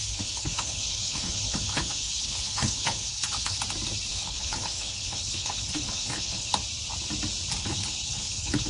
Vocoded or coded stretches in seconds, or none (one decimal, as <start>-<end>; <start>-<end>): 0.0-3.6; 4.1-6.5; 7.6-8.7